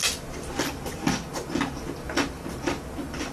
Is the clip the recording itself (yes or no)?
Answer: yes